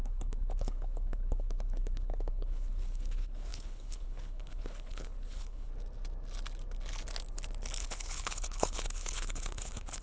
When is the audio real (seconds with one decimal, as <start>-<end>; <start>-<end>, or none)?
5.7-7.8